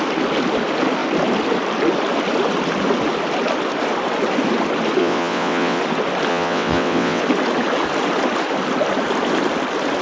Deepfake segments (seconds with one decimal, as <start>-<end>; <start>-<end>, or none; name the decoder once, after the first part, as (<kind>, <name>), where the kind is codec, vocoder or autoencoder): 5.0-5.8 (vocoder, WaveNeXt); 6.3-7.2